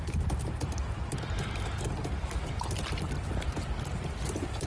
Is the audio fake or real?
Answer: real